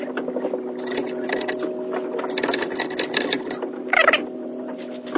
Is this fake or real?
real